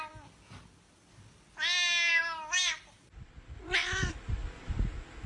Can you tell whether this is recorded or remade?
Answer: recorded